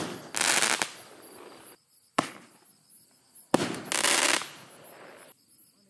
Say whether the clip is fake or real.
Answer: real